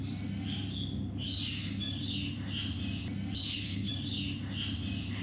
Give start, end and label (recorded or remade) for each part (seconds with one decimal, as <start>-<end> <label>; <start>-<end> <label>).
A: 0.0-3.4 recorded; 3.4-3.9 remade; 3.9-5.2 recorded